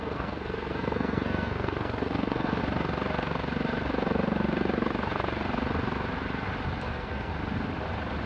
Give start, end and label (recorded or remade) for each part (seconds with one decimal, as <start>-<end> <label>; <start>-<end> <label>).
0.0-2.6 remade; 2.6-6.8 recorded; 6.8-7.3 remade; 7.3-8.3 recorded